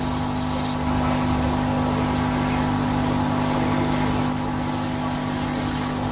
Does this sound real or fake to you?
real